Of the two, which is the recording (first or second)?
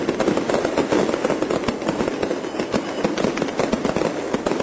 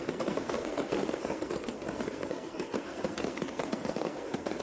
first